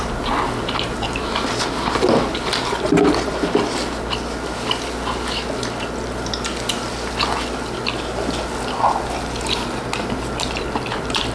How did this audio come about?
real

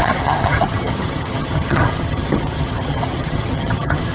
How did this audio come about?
fake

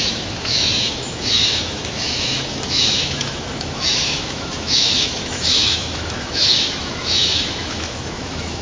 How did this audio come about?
fake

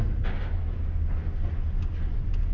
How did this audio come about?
real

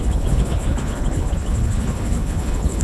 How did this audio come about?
fake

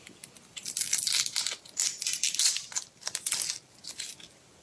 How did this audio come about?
real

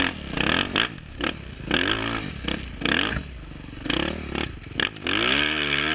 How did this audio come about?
real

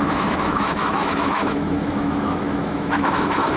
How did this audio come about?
fake